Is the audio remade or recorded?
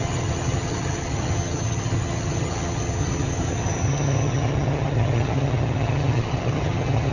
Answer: remade